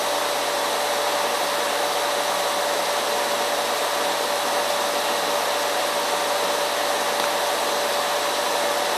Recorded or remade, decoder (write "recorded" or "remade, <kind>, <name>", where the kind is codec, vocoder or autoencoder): recorded